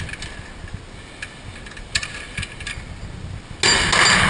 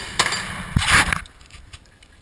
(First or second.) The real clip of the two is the first